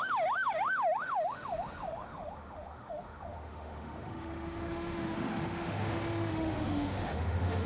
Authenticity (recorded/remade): remade